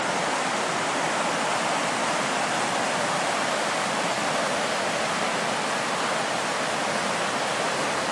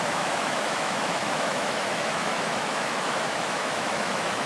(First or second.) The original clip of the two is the first